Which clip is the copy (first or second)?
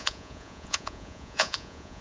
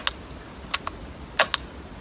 first